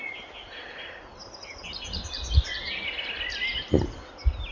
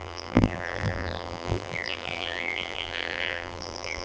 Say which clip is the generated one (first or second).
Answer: second